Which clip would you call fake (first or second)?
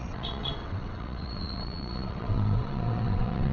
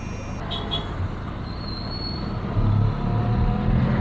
first